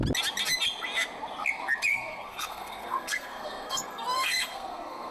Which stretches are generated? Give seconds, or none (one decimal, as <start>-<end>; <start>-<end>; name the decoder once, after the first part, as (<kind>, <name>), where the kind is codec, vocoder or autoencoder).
1.9-5.1 (codec, SNAC)